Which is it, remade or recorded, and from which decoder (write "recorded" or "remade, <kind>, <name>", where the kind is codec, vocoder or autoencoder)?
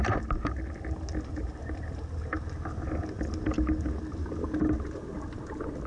recorded